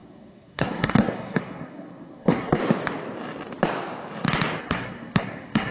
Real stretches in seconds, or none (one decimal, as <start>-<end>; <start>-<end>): 2.6-4.6